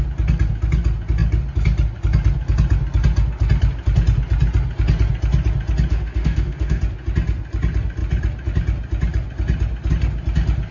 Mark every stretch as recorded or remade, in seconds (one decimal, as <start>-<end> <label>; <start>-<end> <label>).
0.0-5.9 recorded; 5.9-6.8 remade; 6.8-10.7 recorded